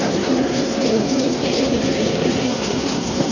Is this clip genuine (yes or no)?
no